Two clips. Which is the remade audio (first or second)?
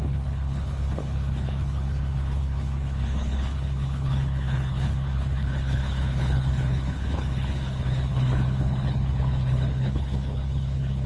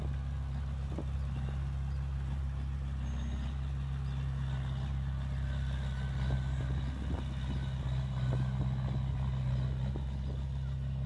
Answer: first